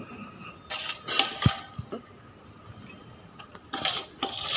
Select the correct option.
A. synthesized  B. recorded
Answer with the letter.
B